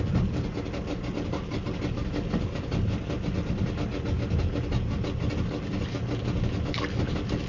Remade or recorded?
recorded